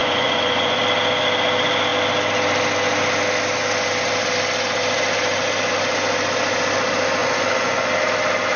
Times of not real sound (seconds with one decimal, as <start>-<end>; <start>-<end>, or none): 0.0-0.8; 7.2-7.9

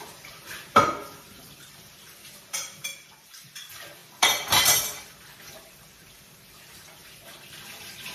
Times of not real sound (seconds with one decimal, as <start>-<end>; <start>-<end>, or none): 0.0-8.1

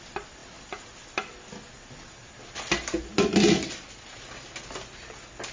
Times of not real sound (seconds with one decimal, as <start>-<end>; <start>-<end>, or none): none

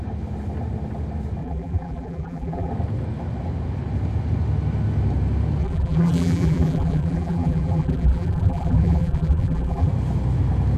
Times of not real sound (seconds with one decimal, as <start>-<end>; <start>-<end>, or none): 1.4-2.7; 5.6-9.9

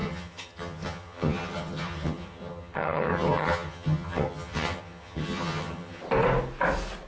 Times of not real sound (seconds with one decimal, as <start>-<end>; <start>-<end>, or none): 0.0-6.0

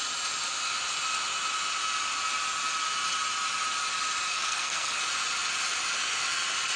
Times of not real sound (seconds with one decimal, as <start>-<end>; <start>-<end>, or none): 4.3-5.0

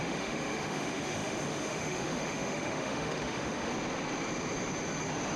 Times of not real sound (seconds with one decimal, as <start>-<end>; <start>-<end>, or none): 0.0-3.7

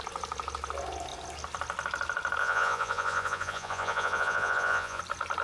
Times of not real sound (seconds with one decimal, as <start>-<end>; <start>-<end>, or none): 2.4-5.0